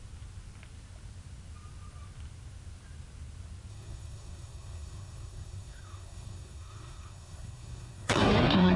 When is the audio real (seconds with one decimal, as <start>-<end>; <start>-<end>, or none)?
0.0-3.7